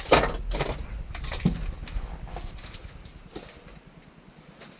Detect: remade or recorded recorded